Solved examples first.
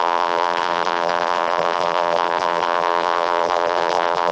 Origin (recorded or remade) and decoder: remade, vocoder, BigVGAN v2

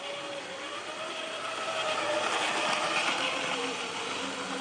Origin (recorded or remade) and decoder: recorded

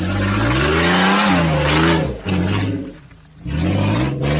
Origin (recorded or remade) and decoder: recorded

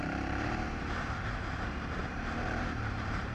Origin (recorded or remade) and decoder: remade, vocoder, BigVGAN v2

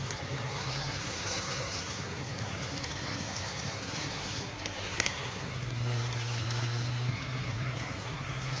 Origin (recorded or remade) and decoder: remade, codec, SNAC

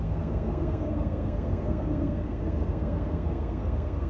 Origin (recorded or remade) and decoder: remade, codec, SNAC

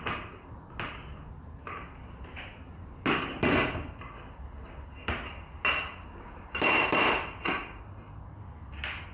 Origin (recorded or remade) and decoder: recorded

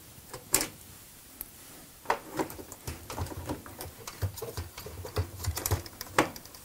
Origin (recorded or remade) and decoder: remade, vocoder, BigVGAN v2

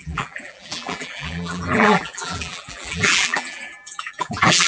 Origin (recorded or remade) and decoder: remade, vocoder, BigVGAN v2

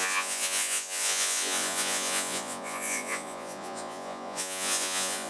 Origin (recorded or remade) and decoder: remade, vocoder, Vocos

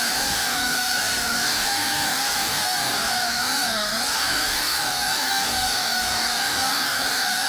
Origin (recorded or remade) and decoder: remade, codec, DAC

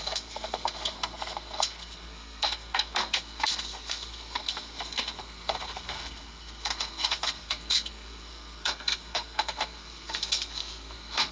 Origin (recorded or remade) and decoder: remade, codec, SNAC